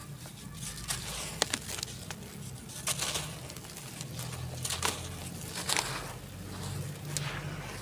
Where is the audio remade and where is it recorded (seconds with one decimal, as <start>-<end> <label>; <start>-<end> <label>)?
0.0-7.8 recorded